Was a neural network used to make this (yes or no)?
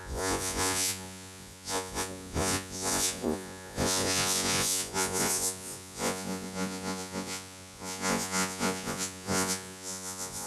yes